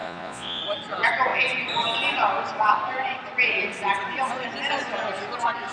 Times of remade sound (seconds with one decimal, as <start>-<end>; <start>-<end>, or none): 0.0-0.6